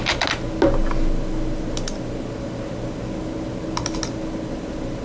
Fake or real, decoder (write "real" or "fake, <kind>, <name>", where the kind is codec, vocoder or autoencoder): real